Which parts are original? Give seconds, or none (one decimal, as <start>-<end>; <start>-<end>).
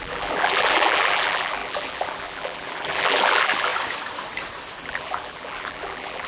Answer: 3.7-4.8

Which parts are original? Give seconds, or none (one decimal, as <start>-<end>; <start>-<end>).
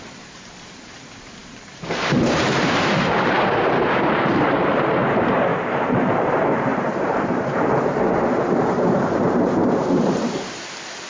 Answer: 5.5-6.3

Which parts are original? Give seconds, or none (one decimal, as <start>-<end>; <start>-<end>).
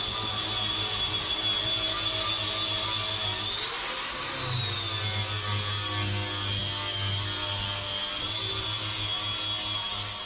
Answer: 0.0-10.3